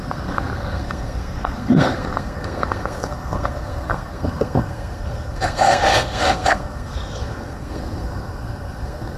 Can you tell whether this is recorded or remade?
remade